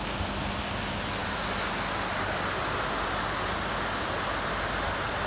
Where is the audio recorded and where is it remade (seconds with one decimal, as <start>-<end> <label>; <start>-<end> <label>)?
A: 0.0-5.3 recorded